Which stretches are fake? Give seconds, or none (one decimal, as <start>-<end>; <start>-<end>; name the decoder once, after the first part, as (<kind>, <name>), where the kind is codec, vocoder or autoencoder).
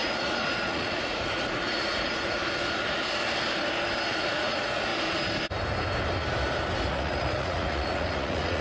0.0-2.4 (vocoder, Vocos); 4.1-4.9; 6.9-8.6